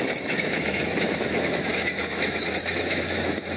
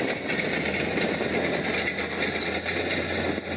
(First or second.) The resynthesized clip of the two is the first